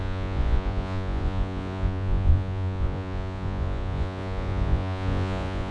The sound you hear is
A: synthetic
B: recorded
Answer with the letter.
A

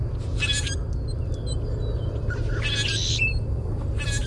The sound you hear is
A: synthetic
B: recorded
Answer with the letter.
B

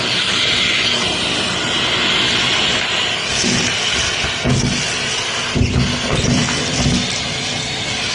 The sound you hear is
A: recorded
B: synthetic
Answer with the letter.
A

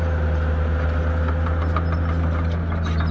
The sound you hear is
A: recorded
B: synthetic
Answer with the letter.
A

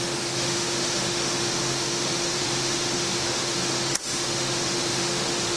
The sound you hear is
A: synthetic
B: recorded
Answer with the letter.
A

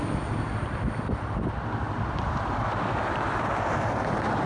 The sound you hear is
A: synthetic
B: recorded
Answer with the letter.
B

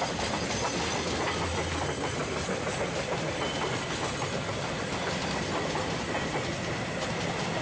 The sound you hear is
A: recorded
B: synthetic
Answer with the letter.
A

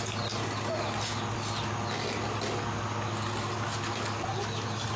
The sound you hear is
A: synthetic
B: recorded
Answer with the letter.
B